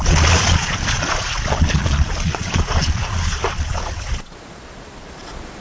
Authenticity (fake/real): fake